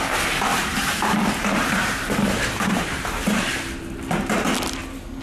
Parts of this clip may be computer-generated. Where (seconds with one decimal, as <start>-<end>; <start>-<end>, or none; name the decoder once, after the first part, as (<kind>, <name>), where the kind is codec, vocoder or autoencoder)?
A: 0.5-3.6 (vocoder, BigVGAN v2)